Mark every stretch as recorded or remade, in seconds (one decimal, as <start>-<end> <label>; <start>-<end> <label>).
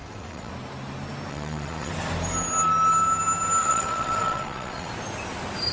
0.0-0.5 remade; 0.5-1.3 recorded; 1.3-1.9 remade; 1.9-3.6 recorded; 3.6-4.9 remade; 4.9-5.7 recorded